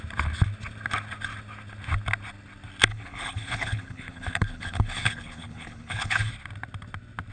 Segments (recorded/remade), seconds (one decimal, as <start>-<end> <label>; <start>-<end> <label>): 0.0-2.9 recorded; 2.9-6.3 remade; 6.3-7.3 recorded